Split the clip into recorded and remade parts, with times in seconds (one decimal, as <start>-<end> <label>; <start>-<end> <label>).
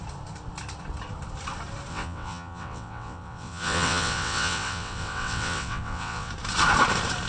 0.0-1.9 recorded; 1.9-6.3 remade; 6.3-7.3 recorded